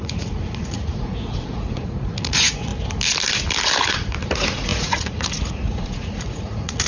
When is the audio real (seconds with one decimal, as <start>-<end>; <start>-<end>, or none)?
2.7-3.8

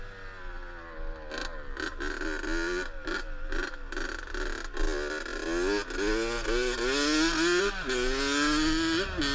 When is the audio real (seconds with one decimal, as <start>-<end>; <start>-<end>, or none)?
0.0-9.3

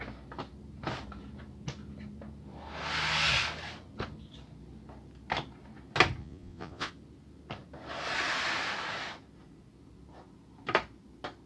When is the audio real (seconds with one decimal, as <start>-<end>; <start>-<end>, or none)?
0.0-6.2; 6.9-11.5

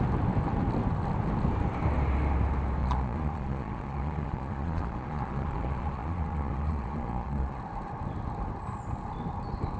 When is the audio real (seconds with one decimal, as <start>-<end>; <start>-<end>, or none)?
0.0-2.8; 7.6-9.8